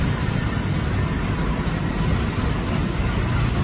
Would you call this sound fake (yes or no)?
no